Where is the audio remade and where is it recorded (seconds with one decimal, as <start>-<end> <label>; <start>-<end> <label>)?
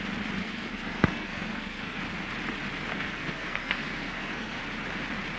0.0-0.4 recorded; 0.4-2.0 remade; 2.0-2.9 recorded; 2.9-4.6 remade; 4.6-5.4 recorded